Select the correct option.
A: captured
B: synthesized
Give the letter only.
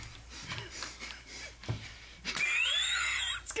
B